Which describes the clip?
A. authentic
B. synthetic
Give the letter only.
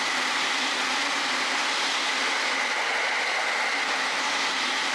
A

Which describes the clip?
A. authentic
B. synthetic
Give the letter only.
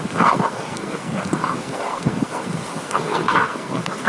B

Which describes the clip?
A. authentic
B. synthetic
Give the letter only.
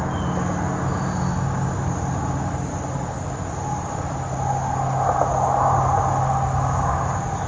A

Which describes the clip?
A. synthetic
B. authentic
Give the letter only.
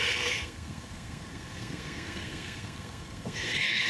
A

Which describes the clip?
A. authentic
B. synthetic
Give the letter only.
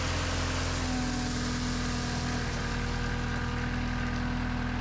A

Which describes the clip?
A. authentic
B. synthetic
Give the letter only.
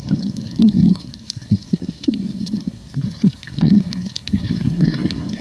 B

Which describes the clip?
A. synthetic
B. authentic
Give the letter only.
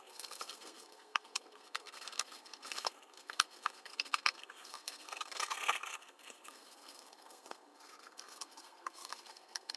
A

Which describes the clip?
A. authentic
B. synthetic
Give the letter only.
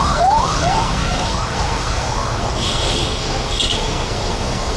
B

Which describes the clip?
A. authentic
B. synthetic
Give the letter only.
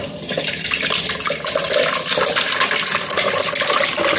A